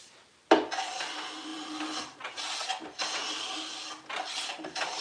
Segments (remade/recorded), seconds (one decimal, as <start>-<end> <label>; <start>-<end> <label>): 0.0-5.0 recorded